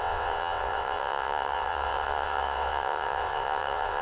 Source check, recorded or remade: remade